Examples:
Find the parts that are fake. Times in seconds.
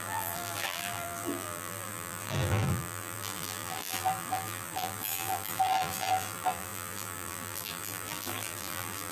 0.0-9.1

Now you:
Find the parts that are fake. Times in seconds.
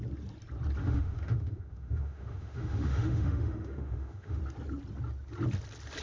0.8-4.4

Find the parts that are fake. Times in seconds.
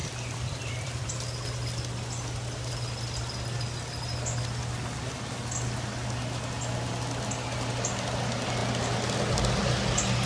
0.0-1.1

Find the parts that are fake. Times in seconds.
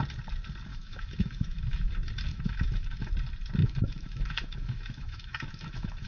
0.7-1.9; 2.3-3.1; 3.6-6.1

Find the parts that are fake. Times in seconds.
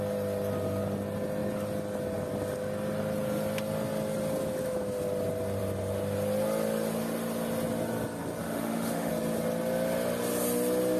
8.4-9.1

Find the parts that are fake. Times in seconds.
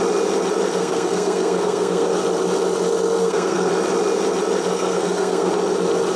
0.8-2.2; 3.2-3.7; 4.7-5.5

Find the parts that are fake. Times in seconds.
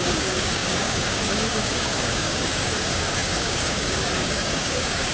0.0-5.1